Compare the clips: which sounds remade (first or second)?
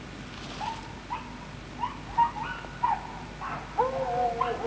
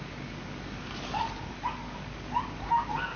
second